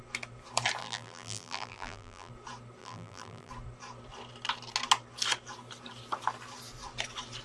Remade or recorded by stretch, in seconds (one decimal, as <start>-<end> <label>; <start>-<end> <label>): 0.0-0.8 recorded; 0.8-2.3 remade; 2.3-2.8 recorded; 2.8-3.5 remade; 3.5-7.4 recorded

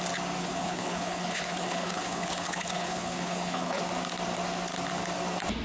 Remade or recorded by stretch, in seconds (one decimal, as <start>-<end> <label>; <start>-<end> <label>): 0.0-0.4 recorded; 0.4-3.8 remade; 3.8-5.6 recorded